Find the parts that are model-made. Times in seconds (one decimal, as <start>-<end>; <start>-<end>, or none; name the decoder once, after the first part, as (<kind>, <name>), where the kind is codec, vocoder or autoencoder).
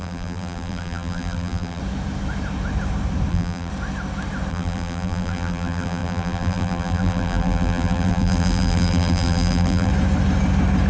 0.0-1.8 (vocoder, BigVGAN v2); 3.3-3.7; 4.5-9.9